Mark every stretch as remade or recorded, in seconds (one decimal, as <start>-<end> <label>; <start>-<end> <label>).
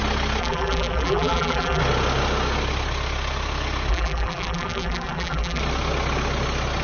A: 0.0-0.4 recorded; 0.4-1.8 remade; 1.8-3.9 recorded; 3.9-5.6 remade; 5.6-6.8 recorded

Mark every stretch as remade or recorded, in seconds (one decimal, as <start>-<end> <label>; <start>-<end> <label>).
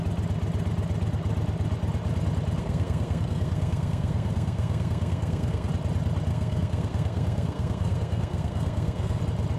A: 0.0-2.6 recorded; 2.6-5.7 remade; 5.7-6.3 recorded; 6.3-9.2 remade; 9.2-9.6 recorded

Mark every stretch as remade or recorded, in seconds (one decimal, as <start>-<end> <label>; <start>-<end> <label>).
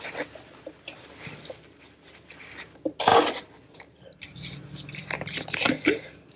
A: 0.0-6.4 recorded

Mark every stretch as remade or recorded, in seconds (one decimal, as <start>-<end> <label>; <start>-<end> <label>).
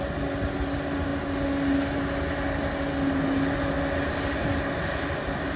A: 0.0-5.6 recorded